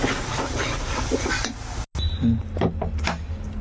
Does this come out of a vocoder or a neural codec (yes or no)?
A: no